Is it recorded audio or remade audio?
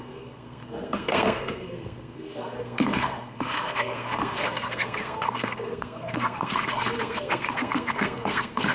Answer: remade